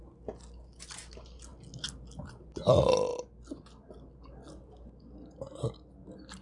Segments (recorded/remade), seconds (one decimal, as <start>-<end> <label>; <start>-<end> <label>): 0.0-6.4 recorded